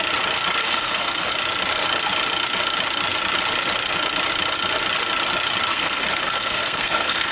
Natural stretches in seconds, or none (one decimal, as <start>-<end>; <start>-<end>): 0.0-0.6; 1.3-5.7